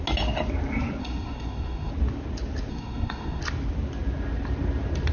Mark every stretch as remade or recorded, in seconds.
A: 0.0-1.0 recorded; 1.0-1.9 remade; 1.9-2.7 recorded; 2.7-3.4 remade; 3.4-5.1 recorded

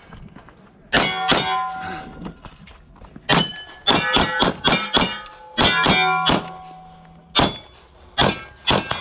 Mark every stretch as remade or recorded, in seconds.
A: 0.0-9.0 recorded